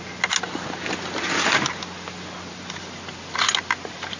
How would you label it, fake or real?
real